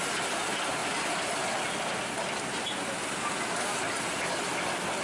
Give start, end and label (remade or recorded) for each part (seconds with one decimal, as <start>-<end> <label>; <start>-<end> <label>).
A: 0.0-5.0 recorded